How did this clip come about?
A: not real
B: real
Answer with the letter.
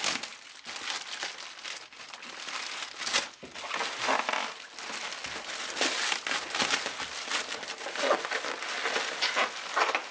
B